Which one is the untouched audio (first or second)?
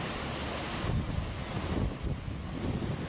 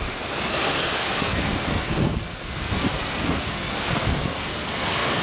first